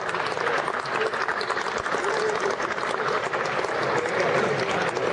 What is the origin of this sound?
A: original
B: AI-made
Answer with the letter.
A